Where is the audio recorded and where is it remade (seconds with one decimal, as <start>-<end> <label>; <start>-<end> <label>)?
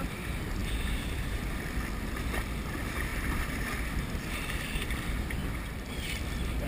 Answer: 0.0-0.6 recorded; 0.6-1.2 remade; 1.2-3.1 recorded; 3.1-3.7 remade; 3.7-6.7 recorded